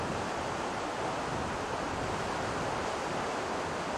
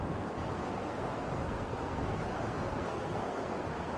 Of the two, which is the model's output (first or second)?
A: second